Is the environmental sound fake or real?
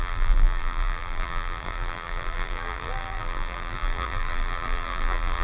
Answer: fake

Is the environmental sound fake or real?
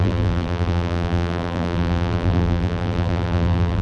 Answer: fake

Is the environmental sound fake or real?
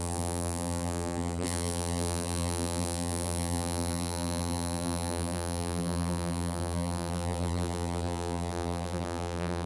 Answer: fake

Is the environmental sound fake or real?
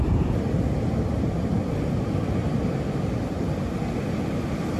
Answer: real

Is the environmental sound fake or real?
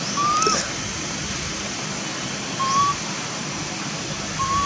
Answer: real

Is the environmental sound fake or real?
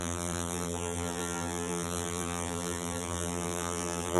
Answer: fake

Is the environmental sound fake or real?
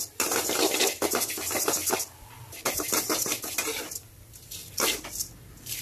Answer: real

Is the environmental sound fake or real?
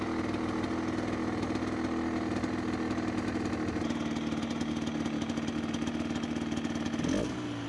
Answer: real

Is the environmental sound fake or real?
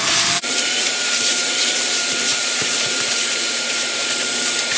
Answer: fake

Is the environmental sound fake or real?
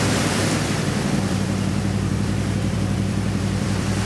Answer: fake